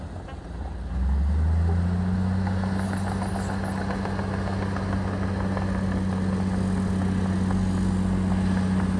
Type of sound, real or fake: real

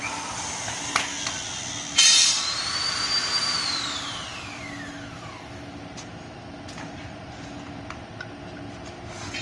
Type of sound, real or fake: real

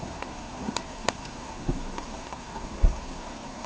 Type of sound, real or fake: fake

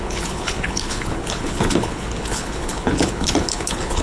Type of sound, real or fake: fake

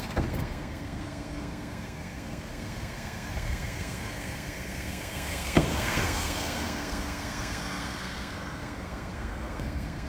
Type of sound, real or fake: fake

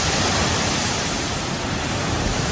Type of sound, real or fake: real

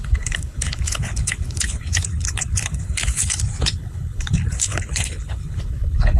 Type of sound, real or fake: fake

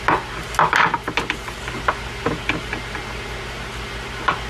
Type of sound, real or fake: real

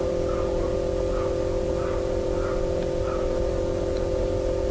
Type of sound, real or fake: real